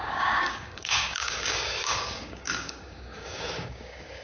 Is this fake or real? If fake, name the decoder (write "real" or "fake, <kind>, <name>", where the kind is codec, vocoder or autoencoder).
fake, codec, DAC